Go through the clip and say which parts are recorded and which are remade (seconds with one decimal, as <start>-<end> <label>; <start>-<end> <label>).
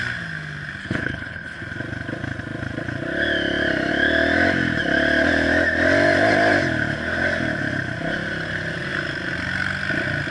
0.0-0.8 recorded; 0.8-1.6 remade; 1.6-10.3 recorded